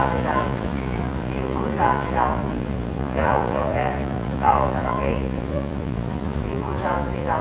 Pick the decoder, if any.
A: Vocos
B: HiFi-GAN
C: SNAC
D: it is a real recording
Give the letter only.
A